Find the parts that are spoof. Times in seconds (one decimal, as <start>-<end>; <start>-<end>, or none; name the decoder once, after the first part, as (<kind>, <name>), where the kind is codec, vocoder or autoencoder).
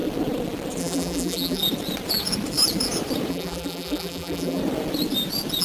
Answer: 0.8-1.6 (vocoder, BigVGAN v2); 3.3-4.6